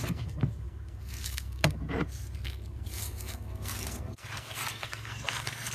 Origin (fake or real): fake